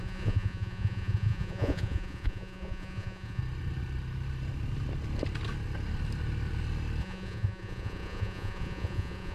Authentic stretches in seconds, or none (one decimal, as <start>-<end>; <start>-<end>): 3.4-7.0